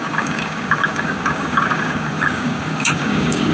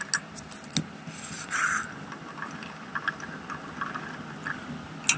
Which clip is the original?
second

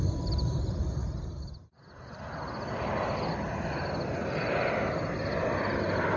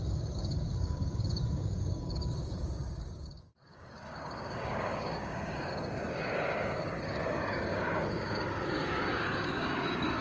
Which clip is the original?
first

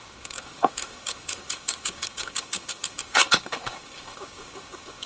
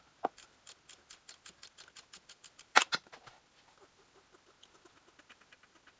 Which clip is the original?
second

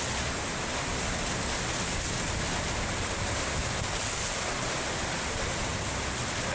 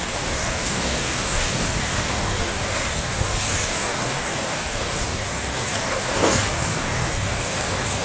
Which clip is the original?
first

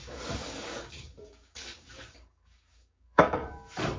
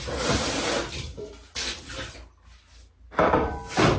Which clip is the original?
second